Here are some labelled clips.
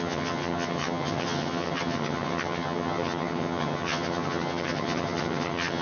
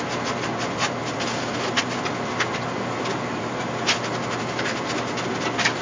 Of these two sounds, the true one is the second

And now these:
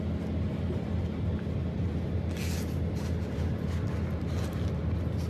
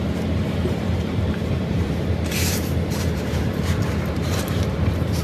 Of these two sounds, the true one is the first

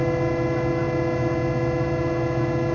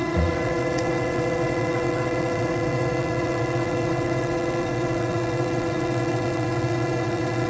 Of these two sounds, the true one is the first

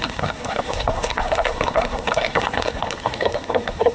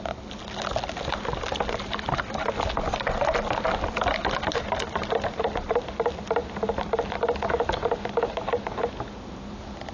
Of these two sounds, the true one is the second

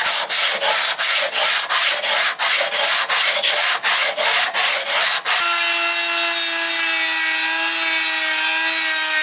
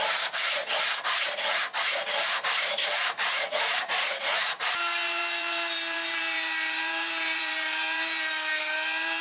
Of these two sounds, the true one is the first